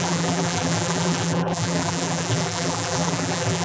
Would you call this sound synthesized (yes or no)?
yes